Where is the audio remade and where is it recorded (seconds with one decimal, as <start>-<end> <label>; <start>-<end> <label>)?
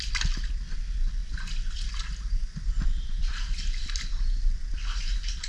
0.0-5.5 recorded